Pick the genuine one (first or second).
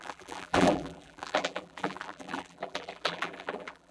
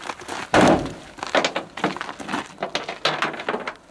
second